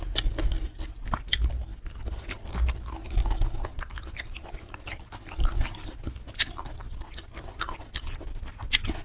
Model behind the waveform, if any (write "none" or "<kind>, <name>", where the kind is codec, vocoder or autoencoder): none